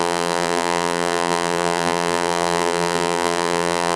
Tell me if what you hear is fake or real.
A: fake